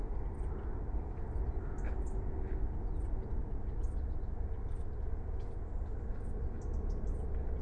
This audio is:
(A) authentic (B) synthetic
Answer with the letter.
A